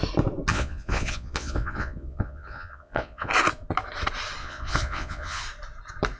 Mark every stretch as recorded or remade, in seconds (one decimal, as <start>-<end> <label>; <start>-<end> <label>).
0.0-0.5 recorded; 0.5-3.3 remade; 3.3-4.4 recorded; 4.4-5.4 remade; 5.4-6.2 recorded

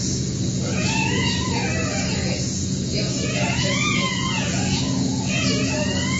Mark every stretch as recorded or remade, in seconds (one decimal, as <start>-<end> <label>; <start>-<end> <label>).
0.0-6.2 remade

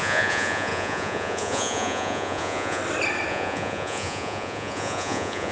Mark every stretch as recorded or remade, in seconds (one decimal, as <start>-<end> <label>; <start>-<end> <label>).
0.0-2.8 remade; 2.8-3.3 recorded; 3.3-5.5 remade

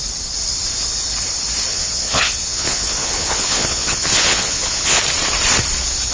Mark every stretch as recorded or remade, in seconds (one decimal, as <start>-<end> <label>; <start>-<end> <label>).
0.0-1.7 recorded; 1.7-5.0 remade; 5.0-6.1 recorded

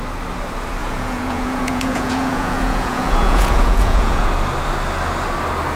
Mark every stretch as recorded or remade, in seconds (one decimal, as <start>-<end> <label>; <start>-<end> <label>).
0.0-0.8 recorded; 0.8-4.3 remade; 4.3-5.8 recorded

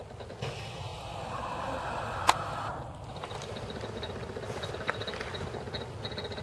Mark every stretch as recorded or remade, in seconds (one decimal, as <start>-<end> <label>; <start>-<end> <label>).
0.0-6.4 recorded

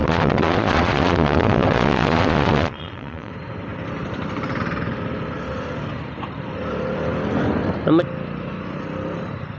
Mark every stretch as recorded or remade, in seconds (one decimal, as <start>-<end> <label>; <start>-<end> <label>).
0.0-3.3 remade; 3.3-9.6 recorded